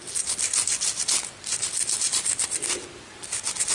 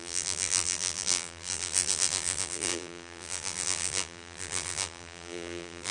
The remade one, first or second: second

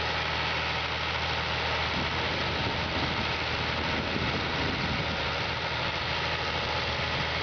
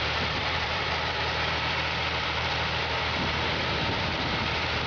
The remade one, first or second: second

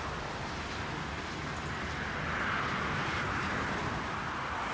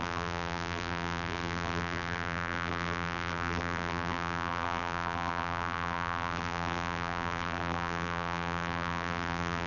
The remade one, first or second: second